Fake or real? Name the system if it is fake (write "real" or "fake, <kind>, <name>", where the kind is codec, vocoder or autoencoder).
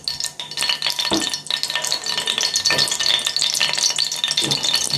real